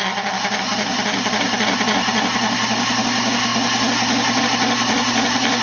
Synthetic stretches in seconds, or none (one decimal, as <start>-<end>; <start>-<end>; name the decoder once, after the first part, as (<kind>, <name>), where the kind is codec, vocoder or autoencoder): none